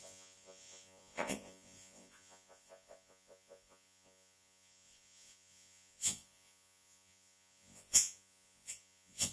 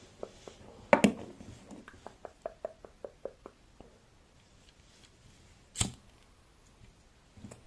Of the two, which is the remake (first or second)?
first